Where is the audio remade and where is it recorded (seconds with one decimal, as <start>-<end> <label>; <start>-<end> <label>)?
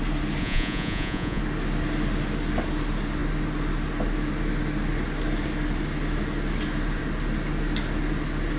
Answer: 0.0-0.4 recorded; 0.4-1.4 remade; 1.4-8.6 recorded